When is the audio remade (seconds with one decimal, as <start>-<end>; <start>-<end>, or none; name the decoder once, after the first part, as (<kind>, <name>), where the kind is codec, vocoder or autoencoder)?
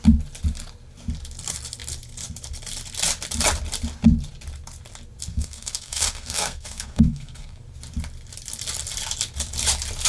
5.3-7.6 (codec, SNAC)